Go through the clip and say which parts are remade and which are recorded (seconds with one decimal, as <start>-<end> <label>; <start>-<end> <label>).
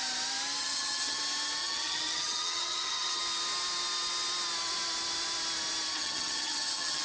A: 0.0-0.6 recorded; 0.6-1.2 remade; 1.2-1.6 recorded; 1.6-3.2 remade; 3.2-5.9 recorded; 5.9-7.0 remade